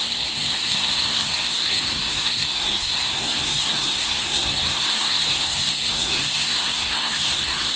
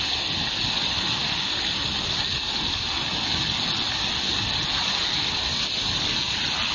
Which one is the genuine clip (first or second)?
second